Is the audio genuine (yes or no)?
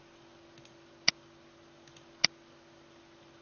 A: yes